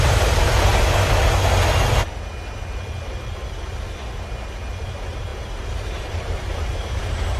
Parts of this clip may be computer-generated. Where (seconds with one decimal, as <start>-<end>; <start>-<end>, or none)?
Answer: 0.0-0.7; 4.8-7.4